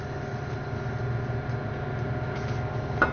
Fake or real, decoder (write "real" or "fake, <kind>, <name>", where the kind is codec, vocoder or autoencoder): real